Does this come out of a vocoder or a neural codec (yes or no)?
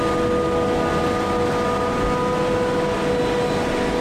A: no